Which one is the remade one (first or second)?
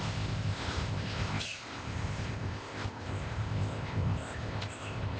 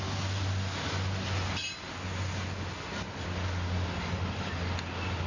first